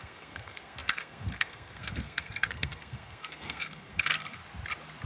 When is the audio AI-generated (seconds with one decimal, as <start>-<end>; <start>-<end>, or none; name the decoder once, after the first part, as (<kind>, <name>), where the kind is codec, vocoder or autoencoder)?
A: 0.0-4.4 (codec, SNAC)